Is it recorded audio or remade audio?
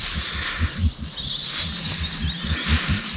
recorded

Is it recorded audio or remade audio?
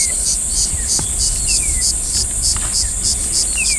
recorded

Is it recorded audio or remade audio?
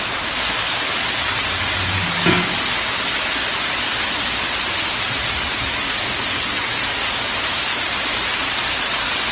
recorded